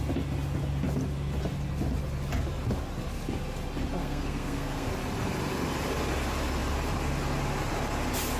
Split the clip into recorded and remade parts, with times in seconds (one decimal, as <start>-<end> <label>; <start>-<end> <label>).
0.0-4.0 recorded; 4.0-4.9 remade; 4.9-8.4 recorded